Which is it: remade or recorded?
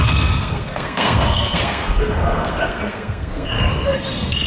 remade